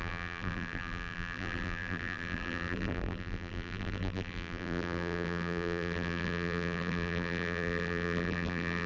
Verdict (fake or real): fake